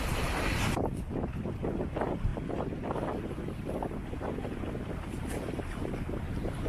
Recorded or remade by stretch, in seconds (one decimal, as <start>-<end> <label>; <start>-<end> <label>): 0.0-6.7 recorded